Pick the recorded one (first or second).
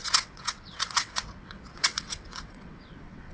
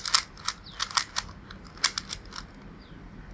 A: second